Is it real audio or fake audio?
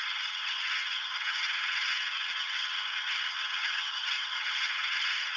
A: fake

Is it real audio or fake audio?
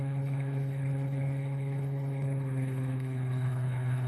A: fake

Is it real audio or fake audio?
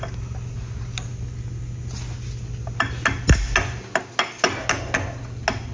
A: real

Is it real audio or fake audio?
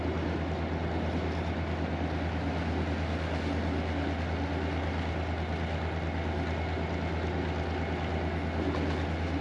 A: real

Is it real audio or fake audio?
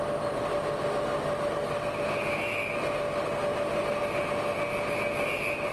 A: real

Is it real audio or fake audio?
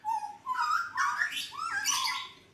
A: real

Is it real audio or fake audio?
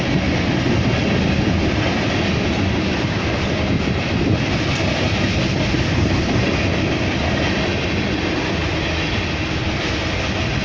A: real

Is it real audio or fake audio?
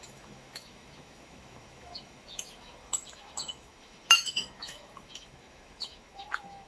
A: fake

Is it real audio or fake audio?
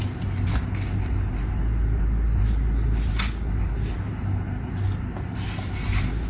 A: real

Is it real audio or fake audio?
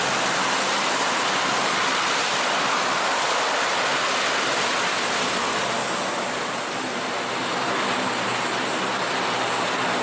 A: real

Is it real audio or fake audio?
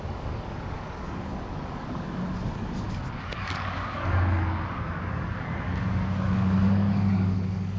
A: fake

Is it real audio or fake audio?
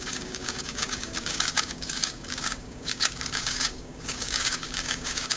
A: fake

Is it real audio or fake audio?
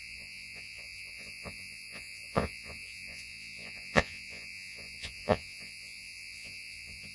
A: fake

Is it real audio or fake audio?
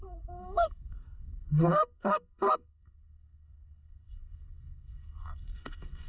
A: fake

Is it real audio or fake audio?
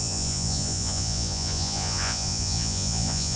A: fake